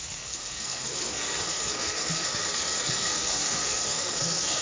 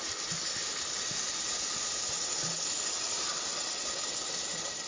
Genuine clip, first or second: second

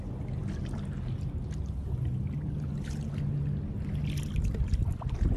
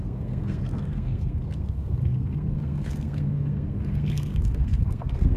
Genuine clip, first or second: first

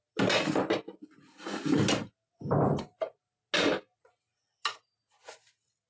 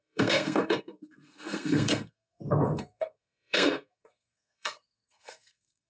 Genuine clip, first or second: first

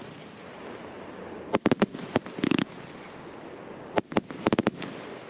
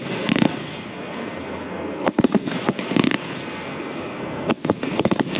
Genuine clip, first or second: first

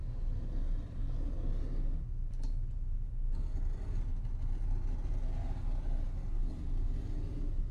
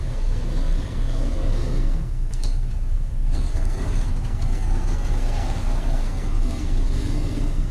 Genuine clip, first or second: first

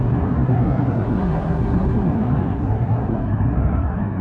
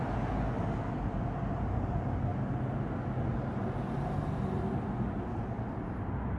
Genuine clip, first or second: second